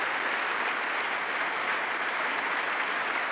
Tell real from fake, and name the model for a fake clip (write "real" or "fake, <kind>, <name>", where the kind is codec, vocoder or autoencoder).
real